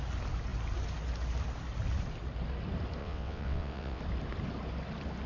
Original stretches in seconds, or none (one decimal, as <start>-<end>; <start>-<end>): 0.0-3.0; 4.0-5.3